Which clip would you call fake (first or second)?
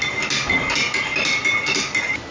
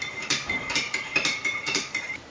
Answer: second